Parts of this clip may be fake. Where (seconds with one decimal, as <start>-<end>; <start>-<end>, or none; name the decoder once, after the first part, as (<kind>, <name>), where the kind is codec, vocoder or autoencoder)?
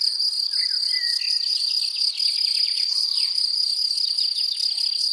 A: 2.6-3.7 (vocoder, BigVGAN v2)